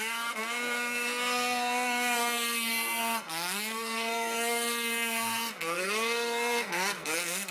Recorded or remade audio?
remade